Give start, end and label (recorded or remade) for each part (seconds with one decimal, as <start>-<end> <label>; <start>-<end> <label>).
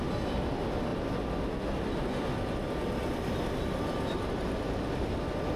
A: 0.0-5.6 recorded